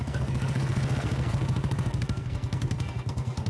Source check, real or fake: fake